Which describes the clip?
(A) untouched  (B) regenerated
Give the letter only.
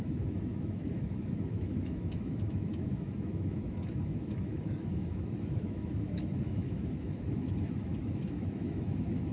B